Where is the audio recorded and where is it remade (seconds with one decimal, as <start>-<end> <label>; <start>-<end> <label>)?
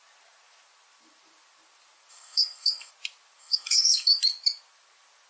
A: 0.0-2.1 recorded; 2.1-2.9 remade; 2.9-3.4 recorded; 3.4-4.2 remade; 4.2-5.3 recorded